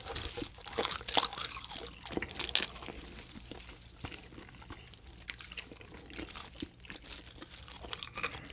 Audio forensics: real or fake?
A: real